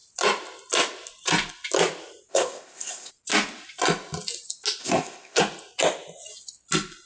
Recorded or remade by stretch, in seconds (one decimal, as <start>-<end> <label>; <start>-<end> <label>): 0.0-2.3 recorded; 2.3-3.1 remade; 3.1-4.8 recorded; 4.8-5.4 remade; 5.4-7.1 recorded